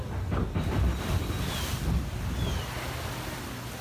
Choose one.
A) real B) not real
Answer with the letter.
A